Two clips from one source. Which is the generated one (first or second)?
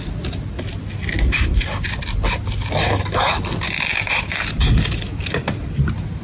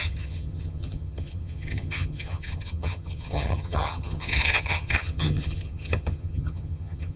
second